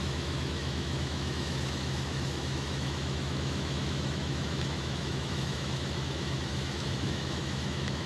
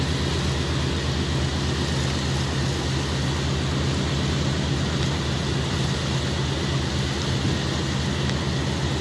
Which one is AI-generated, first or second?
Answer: first